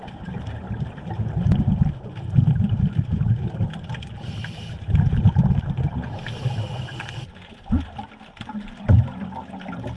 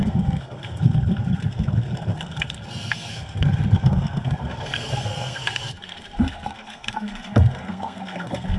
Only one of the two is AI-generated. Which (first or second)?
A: second